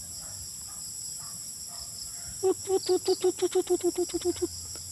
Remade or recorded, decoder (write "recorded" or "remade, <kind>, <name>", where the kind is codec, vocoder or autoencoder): remade, vocoder, BigVGAN v2